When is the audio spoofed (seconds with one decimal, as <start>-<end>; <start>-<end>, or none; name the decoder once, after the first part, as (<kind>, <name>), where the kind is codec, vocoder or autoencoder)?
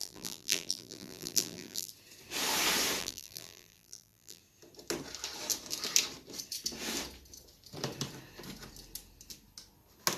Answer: 0.0-1.9 (vocoder, BigVGAN v2); 3.0-4.4